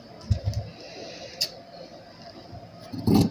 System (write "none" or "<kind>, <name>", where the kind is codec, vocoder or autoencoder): none